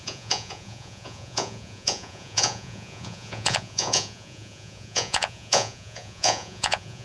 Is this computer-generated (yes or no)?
yes